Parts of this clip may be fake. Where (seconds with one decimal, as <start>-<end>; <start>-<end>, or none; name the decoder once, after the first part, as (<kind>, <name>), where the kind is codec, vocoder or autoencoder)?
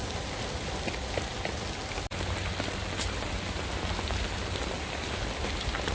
none